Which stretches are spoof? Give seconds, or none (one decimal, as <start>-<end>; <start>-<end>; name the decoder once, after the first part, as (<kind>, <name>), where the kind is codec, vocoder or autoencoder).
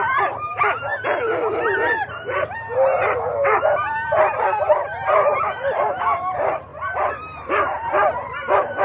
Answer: 0.0-0.9 (vocoder, BigVGAN v2); 1.6-8.8